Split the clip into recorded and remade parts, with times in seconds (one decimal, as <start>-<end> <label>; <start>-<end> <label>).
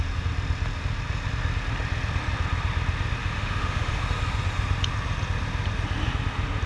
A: 0.0-3.2 recorded; 3.2-4.0 remade; 4.0-6.7 recorded